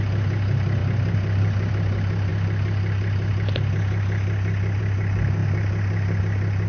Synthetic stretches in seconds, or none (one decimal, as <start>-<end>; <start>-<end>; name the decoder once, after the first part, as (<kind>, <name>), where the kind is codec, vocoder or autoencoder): none